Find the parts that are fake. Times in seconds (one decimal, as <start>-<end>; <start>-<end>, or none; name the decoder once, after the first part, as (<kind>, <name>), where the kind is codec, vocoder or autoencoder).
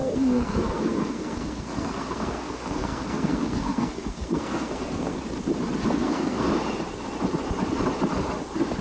0.0-5.2 (codec, SNAC); 6.0-6.5